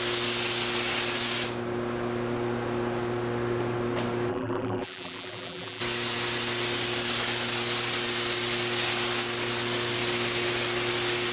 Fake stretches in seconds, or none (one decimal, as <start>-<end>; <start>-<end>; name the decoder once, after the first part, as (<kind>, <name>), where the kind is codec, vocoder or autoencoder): 4.3-5.8 (vocoder, BigVGAN v2)